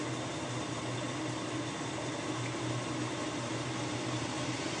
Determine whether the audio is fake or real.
real